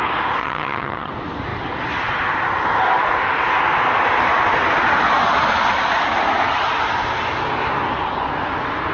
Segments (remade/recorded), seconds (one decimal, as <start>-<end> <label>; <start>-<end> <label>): 0.0-0.4 recorded; 0.4-1.1 remade; 1.1-8.9 recorded